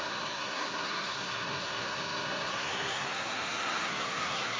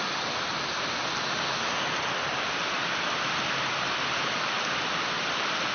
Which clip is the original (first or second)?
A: second